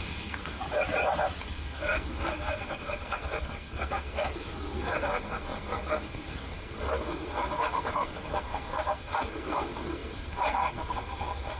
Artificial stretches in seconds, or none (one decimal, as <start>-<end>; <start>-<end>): 0.0-0.6; 1.4-11.6